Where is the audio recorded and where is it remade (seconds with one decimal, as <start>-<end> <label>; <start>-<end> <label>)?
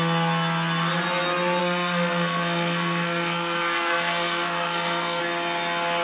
0.0-1.6 recorded; 1.6-5.2 remade; 5.2-6.0 recorded